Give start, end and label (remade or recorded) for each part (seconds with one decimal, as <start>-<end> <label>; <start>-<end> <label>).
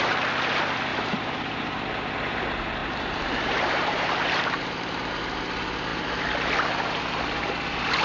0.0-0.9 recorded; 0.9-1.9 remade; 1.9-2.8 recorded; 2.8-5.2 remade; 5.2-8.0 recorded